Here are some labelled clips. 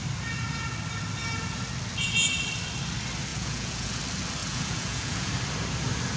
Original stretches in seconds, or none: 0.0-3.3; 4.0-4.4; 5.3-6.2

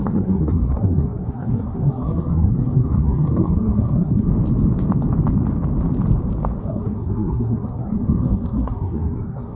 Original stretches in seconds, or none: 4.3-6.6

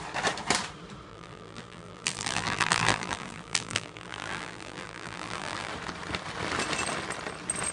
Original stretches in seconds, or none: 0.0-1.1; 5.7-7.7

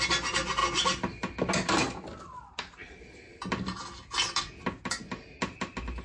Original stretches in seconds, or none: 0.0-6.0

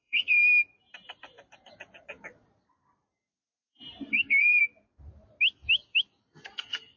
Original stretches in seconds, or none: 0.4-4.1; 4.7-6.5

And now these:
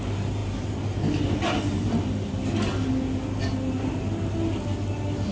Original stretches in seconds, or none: 0.0-5.3